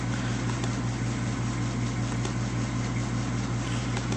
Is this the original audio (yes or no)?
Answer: yes